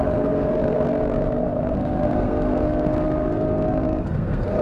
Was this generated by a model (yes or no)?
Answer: yes